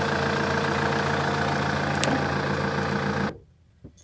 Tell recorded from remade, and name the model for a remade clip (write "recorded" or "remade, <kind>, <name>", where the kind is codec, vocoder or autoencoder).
recorded